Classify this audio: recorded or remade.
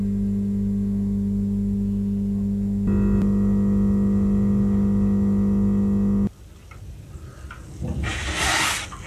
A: recorded